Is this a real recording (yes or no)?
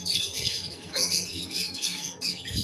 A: no